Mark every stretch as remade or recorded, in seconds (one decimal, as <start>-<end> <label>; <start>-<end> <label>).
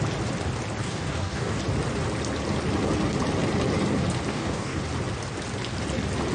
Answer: 0.0-0.8 recorded; 0.8-1.6 remade; 1.6-4.3 recorded; 4.3-4.8 remade; 4.8-6.3 recorded